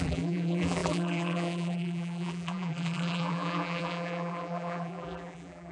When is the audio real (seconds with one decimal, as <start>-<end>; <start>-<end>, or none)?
none